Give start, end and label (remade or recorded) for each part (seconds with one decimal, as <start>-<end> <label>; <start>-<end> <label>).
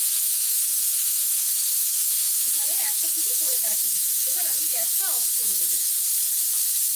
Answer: 0.0-6.1 remade; 6.1-7.0 recorded